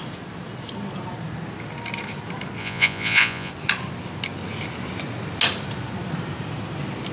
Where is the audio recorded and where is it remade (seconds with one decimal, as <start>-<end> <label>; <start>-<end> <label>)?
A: 0.0-2.6 recorded; 2.6-3.5 remade; 3.5-7.1 recorded